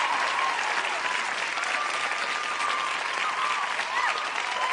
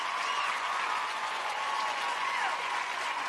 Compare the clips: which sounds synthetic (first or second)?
second